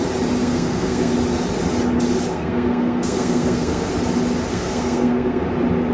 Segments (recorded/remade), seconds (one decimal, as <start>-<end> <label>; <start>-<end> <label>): 0.0-0.4 recorded; 0.4-1.1 remade; 1.1-2.3 recorded; 2.3-3.9 remade; 3.9-4.5 recorded; 4.5-5.4 remade; 5.4-5.9 recorded